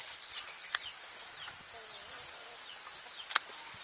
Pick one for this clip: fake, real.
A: real